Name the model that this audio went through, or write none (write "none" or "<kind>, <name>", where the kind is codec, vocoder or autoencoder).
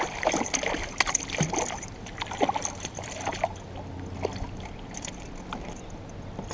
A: none